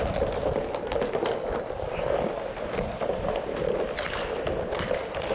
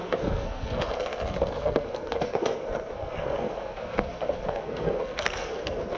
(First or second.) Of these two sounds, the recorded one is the first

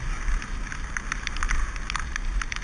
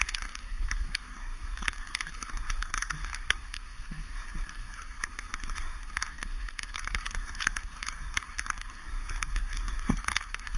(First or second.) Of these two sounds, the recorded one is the first